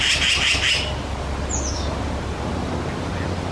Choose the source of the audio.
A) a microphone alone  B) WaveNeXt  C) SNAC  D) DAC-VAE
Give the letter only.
A